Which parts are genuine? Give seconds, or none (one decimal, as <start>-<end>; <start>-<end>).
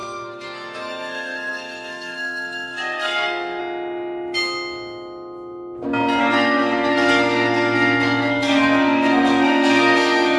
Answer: 3.6-6.2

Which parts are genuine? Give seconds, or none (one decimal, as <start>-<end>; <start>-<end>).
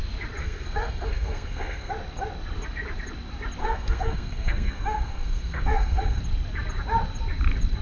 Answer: 0.0-0.4; 1.9-3.6; 6.2-7.8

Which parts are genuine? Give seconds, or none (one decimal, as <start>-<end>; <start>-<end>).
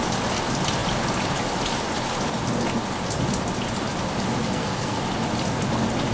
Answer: 0.0-4.4; 5.0-6.1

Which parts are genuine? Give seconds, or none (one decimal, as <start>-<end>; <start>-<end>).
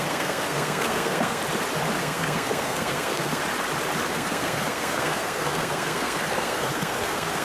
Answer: 1.4-2.0; 3.4-4.1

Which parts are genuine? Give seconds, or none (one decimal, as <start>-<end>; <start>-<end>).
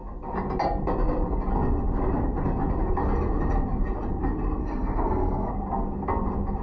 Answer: 0.0-4.6; 5.5-6.6